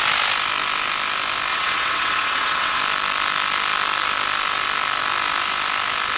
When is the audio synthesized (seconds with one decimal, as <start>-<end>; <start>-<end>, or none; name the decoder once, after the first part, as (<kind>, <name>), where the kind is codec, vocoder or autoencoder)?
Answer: 1.5-2.8 (vocoder, WaveNeXt)